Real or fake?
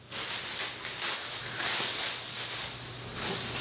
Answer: real